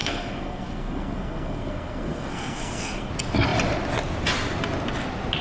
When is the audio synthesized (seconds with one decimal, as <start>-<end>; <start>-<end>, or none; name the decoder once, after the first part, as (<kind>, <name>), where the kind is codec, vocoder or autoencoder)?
0.0-3.1 (codec, SNAC)